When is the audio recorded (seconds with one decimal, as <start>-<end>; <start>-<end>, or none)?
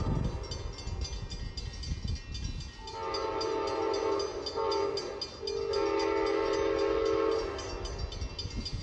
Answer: 0.0-8.8